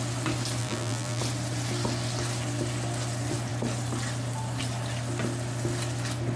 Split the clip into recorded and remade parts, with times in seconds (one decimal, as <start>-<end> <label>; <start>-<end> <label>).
0.0-0.6 recorded; 0.6-1.2 remade; 1.2-6.4 recorded